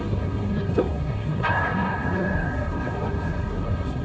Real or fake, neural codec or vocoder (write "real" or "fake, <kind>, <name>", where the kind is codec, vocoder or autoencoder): fake, codec, SNAC